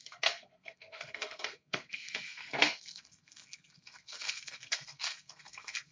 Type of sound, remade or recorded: remade